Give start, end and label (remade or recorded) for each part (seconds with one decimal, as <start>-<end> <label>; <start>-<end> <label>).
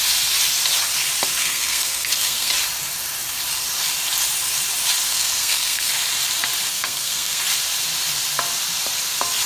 0.0-1.4 recorded; 1.4-2.5 remade; 2.5-5.1 recorded; 5.1-5.9 remade; 5.9-6.7 recorded; 6.7-7.4 remade; 7.4-9.5 recorded